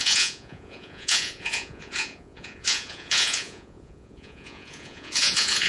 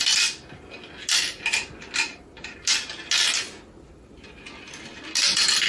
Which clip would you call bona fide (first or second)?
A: second